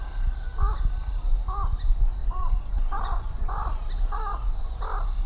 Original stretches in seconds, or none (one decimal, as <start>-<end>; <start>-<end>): 0.0-2.2; 3.6-4.3; 4.8-5.3